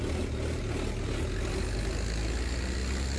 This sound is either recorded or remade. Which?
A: recorded